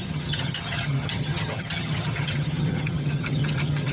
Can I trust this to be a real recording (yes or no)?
no